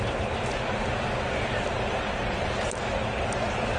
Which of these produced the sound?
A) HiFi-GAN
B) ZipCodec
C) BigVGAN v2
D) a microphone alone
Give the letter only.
D